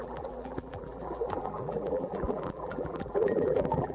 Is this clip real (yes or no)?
no